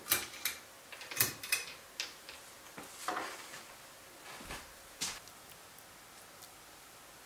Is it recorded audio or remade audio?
recorded